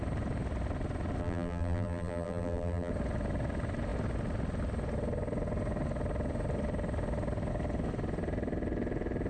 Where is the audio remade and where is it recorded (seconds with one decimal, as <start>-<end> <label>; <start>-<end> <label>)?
0.0-1.2 recorded; 1.2-2.9 remade; 2.9-9.3 recorded